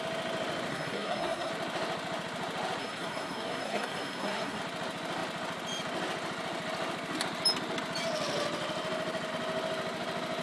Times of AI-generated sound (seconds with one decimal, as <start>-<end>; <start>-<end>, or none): 0.7-1.5; 2.8-4.6